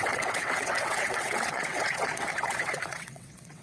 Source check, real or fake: fake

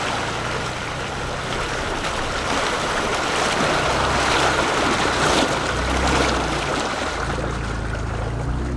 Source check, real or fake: real